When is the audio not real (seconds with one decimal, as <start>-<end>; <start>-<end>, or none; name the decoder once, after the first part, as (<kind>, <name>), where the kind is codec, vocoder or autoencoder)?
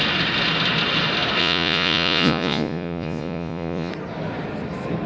1.4-3.9 (vocoder, Vocos)